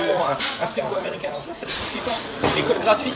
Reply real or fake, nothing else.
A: fake